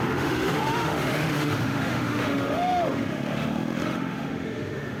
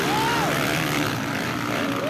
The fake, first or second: first